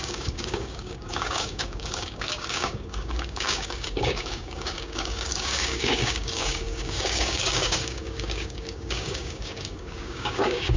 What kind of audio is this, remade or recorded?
remade